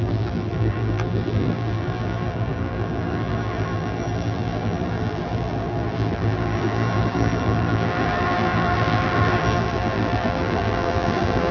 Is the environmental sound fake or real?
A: fake